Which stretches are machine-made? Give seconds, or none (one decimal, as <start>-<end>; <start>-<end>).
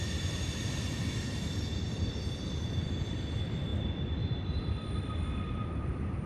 0.0-6.3